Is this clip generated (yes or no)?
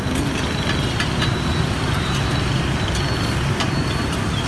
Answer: no